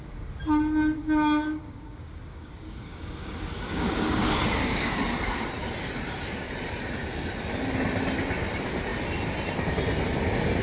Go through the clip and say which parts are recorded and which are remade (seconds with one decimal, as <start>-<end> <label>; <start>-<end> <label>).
0.0-1.0 recorded; 1.0-4.9 remade; 4.9-10.6 recorded